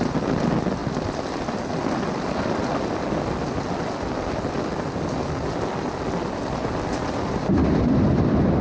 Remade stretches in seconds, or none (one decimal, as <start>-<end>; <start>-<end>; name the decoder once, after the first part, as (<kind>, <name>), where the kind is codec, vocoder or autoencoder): none